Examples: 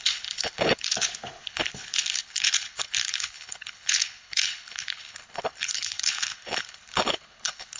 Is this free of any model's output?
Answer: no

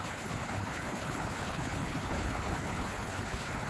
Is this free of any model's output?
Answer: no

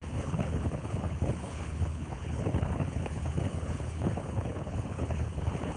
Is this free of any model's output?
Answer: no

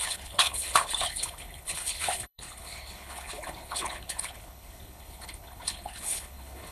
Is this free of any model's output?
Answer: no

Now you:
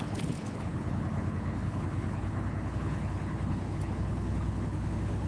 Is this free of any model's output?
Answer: no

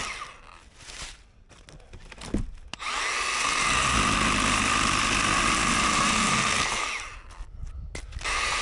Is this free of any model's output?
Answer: yes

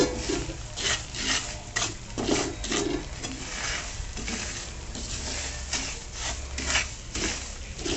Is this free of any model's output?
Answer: yes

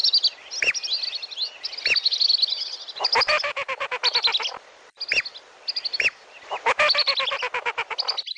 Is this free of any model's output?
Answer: yes